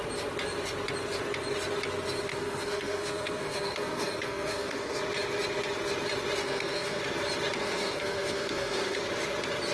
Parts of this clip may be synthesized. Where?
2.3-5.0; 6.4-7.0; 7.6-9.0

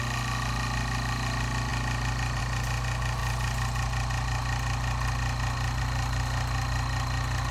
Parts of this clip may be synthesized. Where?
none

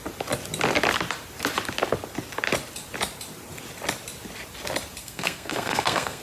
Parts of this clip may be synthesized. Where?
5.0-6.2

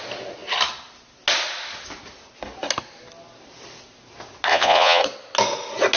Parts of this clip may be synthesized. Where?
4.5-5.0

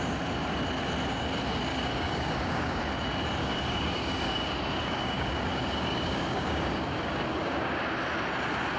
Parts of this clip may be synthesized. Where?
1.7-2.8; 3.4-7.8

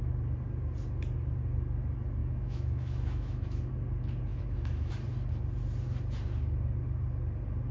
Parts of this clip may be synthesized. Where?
2.2-3.7; 4.3-4.9

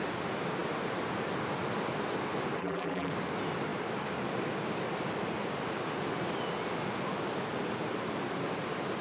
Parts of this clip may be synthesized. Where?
2.6-3.1